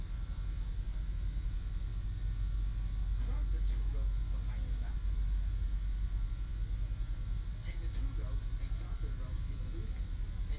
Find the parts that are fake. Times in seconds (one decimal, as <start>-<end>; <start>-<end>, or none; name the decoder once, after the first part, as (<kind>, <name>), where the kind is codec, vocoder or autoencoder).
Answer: none